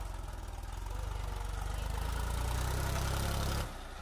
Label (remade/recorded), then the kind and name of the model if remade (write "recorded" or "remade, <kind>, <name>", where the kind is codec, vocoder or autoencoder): recorded